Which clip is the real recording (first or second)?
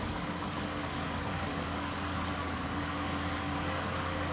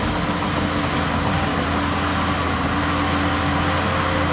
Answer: second